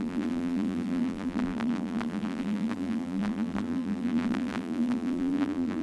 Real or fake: fake